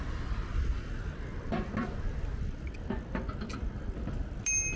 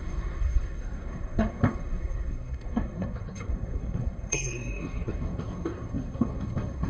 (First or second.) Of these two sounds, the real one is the first